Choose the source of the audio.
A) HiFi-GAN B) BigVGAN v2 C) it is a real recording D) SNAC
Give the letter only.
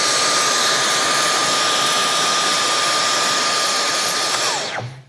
B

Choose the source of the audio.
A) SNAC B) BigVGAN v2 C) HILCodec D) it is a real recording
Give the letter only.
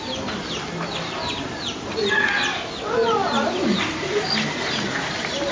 D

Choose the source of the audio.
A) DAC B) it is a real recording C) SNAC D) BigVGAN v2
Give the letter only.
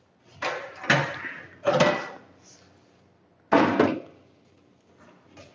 B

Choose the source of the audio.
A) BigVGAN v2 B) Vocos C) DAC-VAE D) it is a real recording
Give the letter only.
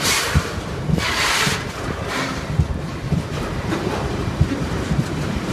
A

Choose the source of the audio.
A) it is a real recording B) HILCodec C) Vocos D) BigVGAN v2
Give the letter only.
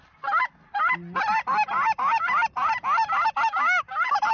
A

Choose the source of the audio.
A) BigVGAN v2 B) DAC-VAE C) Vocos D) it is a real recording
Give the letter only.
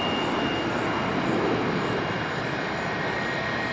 D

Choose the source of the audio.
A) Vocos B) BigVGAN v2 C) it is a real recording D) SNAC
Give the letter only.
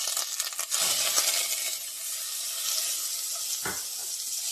C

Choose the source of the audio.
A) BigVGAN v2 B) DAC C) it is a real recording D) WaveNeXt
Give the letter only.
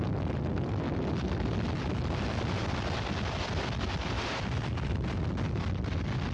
A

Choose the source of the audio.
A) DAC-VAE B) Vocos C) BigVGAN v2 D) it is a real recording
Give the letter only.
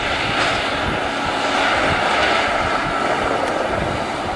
D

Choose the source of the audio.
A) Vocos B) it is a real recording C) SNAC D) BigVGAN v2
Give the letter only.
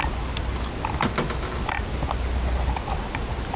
B